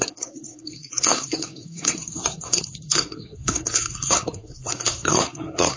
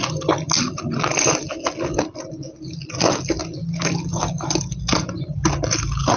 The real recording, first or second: second